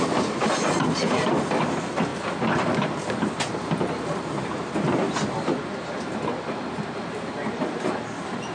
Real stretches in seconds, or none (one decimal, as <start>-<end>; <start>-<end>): 0.0-8.5